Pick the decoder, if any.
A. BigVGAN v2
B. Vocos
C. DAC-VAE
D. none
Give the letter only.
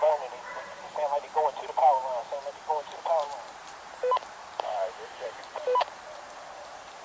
A